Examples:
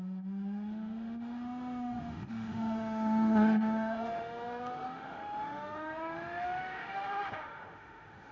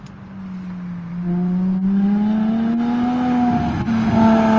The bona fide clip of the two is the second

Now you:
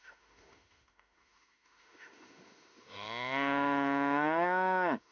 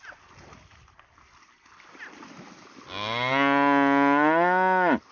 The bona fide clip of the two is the second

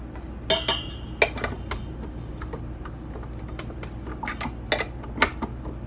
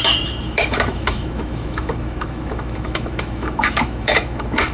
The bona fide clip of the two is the first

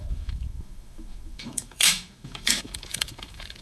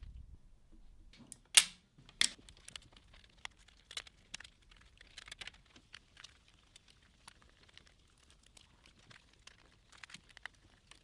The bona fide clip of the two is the second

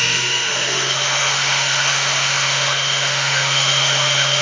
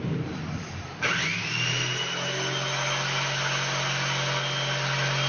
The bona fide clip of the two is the second